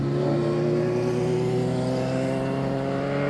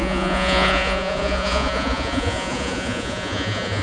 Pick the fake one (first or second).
second